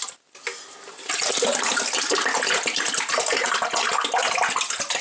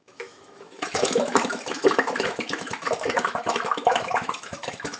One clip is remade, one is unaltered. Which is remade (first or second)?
second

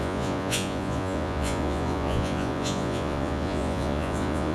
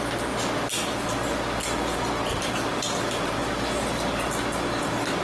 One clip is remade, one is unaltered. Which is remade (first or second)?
first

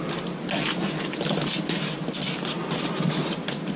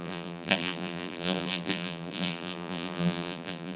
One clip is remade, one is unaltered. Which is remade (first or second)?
second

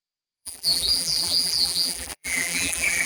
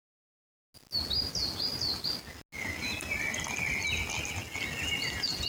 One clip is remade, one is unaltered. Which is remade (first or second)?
first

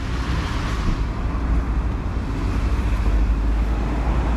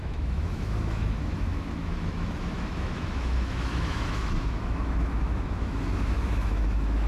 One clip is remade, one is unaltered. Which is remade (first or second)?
second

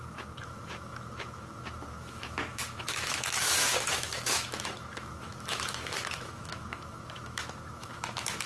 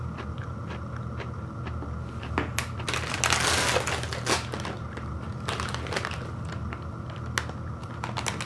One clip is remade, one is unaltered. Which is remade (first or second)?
first